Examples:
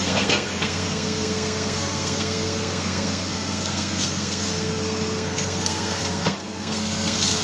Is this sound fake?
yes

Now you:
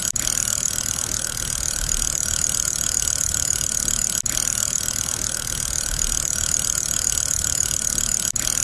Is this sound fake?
no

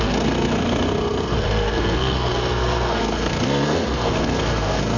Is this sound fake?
yes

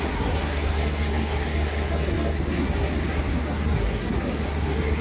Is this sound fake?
yes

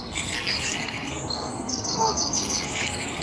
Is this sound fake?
yes